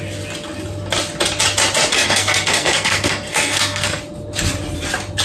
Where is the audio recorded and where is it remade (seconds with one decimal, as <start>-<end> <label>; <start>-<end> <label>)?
0.0-1.9 recorded; 1.9-4.0 remade; 4.0-5.2 recorded